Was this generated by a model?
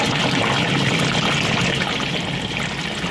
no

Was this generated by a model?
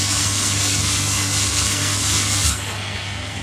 yes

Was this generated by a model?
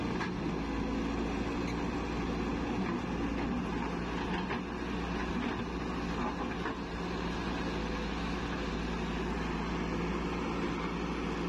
no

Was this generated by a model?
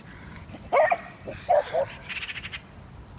no